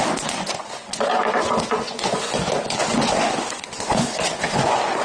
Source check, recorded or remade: remade